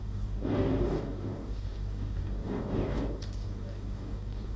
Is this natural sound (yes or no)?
no